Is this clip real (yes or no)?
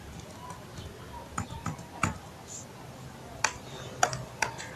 yes